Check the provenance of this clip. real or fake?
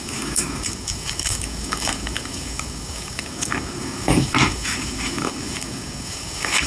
fake